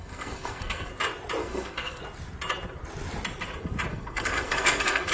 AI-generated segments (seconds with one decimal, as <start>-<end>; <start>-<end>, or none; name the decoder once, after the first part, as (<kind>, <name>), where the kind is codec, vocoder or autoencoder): 0.0-0.9 (codec, SNAC); 1.4-2.0; 3.9-5.1